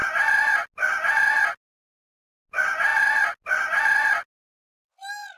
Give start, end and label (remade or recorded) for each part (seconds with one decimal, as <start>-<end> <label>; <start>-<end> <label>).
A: 0.0-5.4 recorded